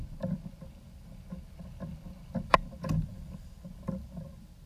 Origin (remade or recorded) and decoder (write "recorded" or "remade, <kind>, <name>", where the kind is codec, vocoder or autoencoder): recorded